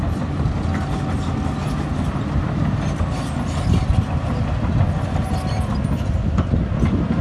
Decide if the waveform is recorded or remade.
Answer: recorded